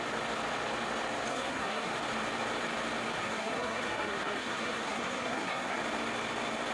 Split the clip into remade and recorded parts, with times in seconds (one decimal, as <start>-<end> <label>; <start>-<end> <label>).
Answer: 0.0-1.3 recorded; 1.3-1.9 remade; 1.9-3.2 recorded; 3.2-5.8 remade; 5.8-6.7 recorded